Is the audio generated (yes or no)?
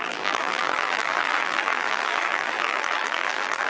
yes